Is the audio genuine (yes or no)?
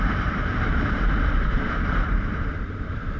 no